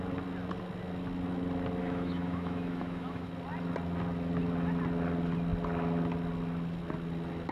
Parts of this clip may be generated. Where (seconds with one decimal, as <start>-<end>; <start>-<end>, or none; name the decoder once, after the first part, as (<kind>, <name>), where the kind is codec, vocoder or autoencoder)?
1.8-3.3 (autoencoder, DAC-VAE)